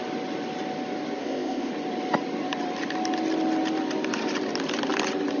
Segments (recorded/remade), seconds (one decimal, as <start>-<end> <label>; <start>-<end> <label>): 0.0-1.2 recorded; 1.2-1.7 remade; 1.7-5.4 recorded